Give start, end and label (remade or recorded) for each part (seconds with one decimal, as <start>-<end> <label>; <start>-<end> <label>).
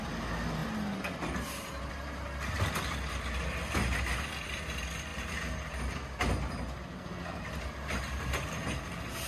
0.0-6.9 recorded; 6.9-7.4 remade; 7.4-9.3 recorded